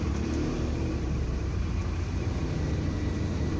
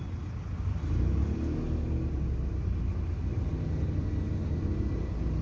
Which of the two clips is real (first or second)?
second